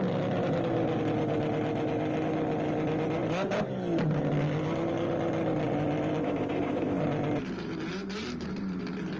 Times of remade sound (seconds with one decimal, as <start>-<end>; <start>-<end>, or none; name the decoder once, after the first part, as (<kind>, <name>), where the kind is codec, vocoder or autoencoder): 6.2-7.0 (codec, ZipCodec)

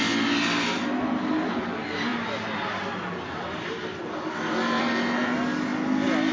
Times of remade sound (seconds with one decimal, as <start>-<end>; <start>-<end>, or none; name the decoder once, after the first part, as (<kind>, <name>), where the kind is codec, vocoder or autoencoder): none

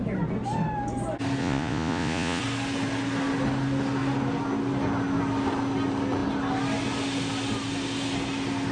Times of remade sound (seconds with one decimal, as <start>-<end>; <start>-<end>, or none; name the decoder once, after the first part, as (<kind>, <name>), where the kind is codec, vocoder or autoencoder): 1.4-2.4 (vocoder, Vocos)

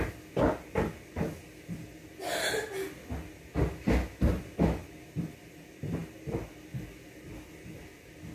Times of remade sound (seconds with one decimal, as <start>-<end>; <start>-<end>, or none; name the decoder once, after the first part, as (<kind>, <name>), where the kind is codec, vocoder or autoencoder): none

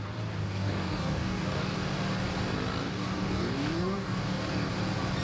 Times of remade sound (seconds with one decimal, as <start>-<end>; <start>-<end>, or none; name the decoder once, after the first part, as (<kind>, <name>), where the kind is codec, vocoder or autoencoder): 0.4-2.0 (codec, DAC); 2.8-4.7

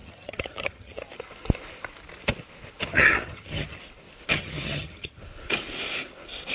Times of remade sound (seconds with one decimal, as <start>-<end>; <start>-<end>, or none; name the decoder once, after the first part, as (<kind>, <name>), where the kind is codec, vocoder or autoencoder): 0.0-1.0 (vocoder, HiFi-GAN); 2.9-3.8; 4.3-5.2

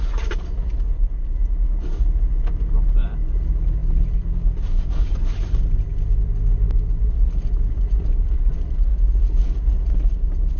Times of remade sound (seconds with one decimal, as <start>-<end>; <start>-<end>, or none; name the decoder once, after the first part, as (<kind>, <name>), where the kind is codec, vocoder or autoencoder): none